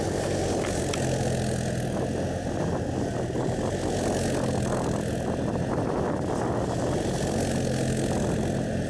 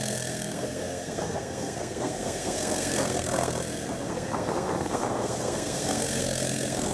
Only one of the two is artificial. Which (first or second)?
second